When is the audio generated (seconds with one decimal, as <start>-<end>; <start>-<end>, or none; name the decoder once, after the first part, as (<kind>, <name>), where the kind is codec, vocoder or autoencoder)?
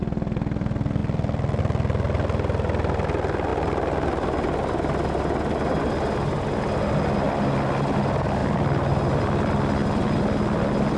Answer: none